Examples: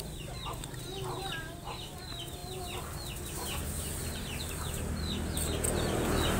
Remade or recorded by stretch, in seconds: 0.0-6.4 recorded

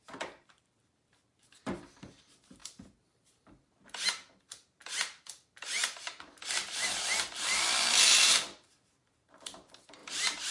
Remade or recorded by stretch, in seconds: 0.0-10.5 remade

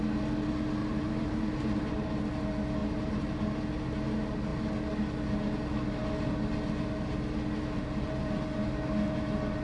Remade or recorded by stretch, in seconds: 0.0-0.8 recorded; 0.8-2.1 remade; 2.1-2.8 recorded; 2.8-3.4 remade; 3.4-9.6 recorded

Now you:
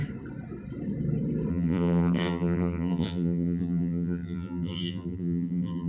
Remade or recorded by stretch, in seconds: 0.0-1.5 recorded; 1.5-5.9 remade

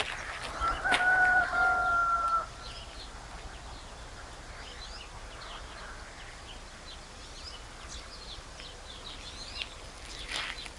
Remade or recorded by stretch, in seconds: 0.0-10.8 recorded